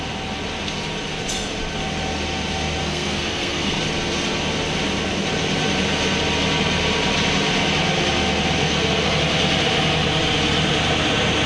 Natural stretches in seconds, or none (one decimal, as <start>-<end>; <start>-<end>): 0.0-2.8; 3.8-8.6; 9.2-11.5